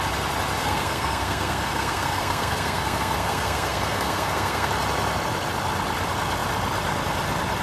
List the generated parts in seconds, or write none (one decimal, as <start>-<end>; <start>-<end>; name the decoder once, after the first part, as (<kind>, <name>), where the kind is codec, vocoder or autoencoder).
0.6-4.7 (codec, SNAC)